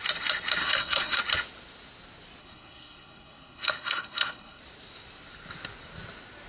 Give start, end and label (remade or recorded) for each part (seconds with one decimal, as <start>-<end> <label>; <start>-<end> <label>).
0.0-0.6 recorded; 0.6-1.2 remade; 1.2-2.4 recorded; 2.4-4.6 remade; 4.6-6.5 recorded